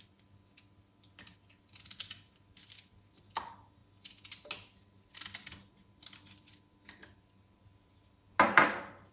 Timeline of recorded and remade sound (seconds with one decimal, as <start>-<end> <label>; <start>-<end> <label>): 0.0-9.1 recorded